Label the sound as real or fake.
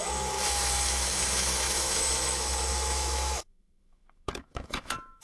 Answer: fake